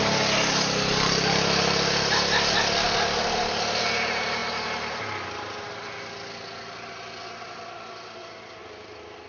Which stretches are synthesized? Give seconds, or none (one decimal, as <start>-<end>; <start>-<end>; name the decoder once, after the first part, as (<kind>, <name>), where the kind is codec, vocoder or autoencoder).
none